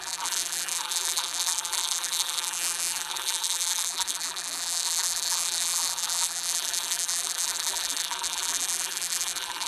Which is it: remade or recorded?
remade